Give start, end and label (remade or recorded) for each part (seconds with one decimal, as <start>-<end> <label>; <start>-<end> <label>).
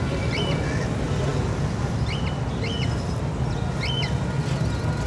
0.0-5.1 recorded